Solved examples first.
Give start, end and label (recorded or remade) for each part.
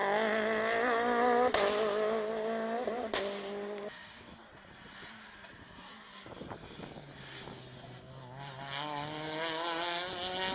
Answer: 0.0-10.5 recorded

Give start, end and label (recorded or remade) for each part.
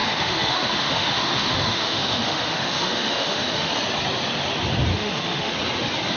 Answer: 0.0-3.7 remade; 3.7-4.9 recorded; 4.9-5.5 remade; 5.5-6.2 recorded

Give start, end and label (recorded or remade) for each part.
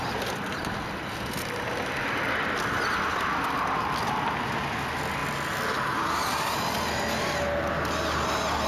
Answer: 0.0-8.7 recorded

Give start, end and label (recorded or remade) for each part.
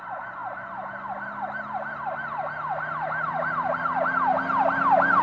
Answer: 0.0-5.2 recorded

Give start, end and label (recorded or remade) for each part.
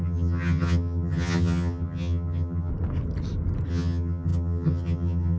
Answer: 0.0-2.7 remade; 2.7-3.7 recorded; 3.7-5.4 remade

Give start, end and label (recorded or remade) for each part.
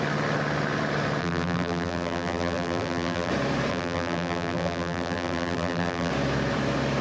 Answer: 0.0-1.2 recorded; 1.2-3.3 remade; 3.3-3.7 recorded; 3.7-6.1 remade; 6.1-7.0 recorded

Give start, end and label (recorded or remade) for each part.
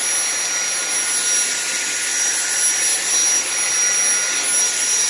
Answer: 0.0-5.1 recorded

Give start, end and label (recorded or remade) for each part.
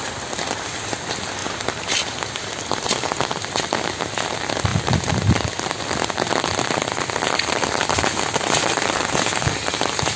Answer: 0.0-10.2 recorded